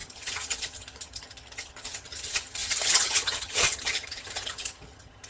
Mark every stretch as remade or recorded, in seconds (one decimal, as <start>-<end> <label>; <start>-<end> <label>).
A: 0.0-5.3 remade